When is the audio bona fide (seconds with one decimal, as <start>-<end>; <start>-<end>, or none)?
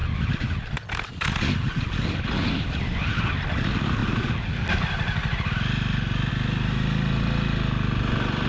0.0-8.5